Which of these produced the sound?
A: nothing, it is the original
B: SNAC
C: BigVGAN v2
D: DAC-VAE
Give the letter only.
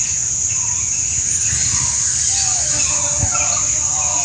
A